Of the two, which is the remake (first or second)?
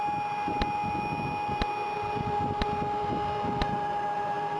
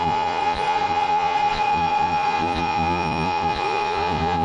second